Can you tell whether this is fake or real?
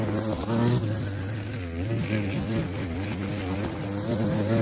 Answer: real